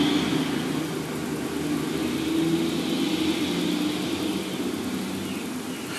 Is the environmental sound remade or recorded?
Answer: recorded